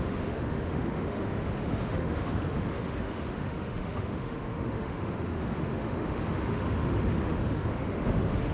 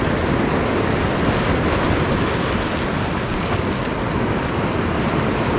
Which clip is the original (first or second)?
second